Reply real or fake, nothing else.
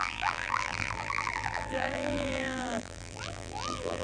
fake